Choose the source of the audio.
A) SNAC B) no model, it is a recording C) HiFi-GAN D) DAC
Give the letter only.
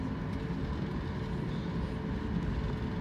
B